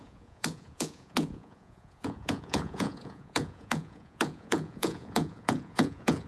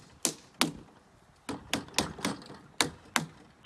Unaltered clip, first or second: second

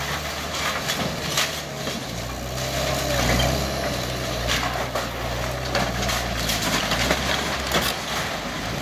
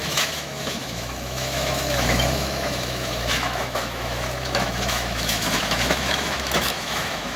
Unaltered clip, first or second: first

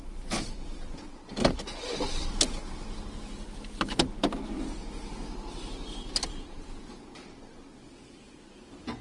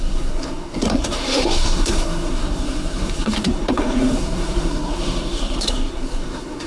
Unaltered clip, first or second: first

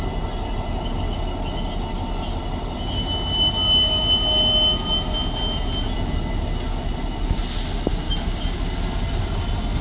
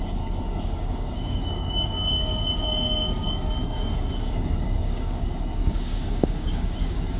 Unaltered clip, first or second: first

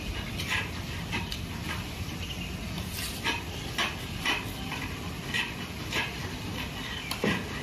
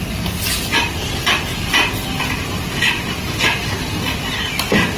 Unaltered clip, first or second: second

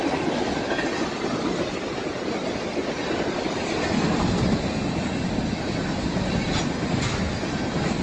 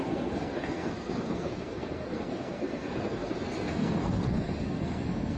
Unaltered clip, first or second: first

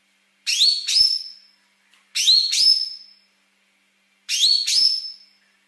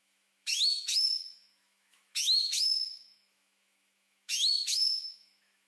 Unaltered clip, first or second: first